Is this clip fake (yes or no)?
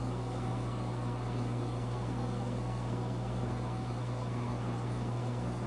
yes